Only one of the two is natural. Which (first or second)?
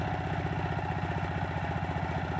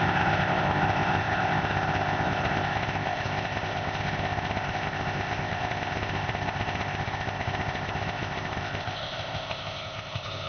first